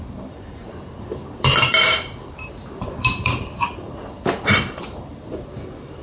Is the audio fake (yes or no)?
yes